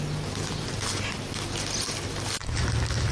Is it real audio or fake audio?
real